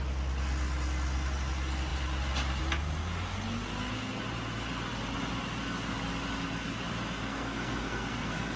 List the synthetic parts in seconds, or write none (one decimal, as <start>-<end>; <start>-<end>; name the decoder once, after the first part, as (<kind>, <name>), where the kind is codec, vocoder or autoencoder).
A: 7.2-8.6 (codec, SNAC)